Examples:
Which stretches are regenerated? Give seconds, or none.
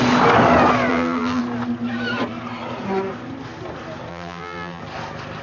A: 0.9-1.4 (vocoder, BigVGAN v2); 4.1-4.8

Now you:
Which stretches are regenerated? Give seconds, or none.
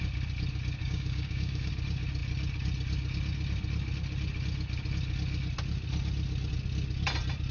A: 0.8-1.7 (codec, DAC)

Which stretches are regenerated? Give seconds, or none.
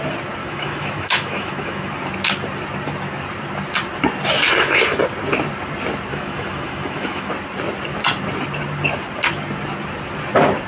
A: 0.4-1.9 (autoencoder, DAC-VAE); 6.1-7.3